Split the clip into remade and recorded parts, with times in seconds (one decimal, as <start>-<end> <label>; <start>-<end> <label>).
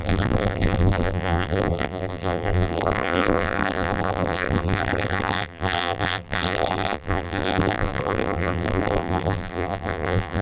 0.0-10.4 remade